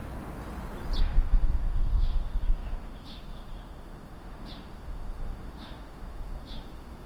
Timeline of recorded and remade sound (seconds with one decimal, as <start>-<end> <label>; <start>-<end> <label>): 0.0-1.0 recorded; 1.0-7.1 remade